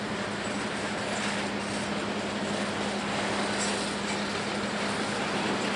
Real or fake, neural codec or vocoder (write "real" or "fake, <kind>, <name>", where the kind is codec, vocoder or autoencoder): real